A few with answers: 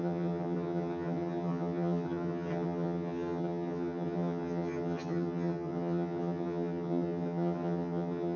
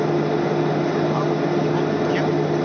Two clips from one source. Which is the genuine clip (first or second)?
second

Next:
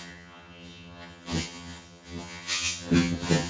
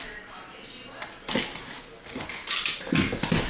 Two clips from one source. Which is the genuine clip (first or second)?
second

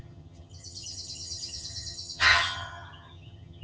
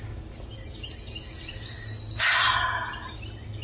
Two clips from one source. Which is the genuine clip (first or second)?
second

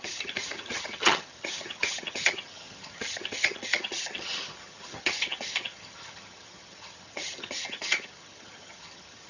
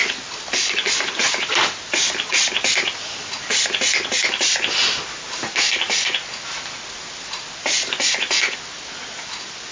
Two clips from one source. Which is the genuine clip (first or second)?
second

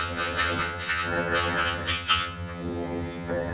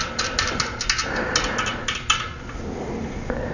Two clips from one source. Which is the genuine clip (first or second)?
second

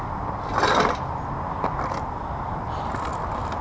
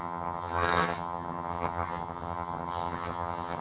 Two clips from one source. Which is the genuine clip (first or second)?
first